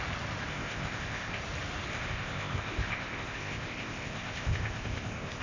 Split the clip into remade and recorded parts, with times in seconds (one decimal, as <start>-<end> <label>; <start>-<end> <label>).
0.0-0.5 recorded; 0.5-1.4 remade; 1.4-1.9 recorded; 1.9-5.4 remade